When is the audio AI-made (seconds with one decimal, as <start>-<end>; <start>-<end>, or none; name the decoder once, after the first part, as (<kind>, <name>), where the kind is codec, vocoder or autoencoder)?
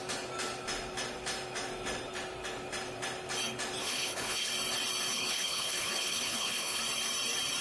3.8-4.5 (codec, HILCodec); 5.1-6.8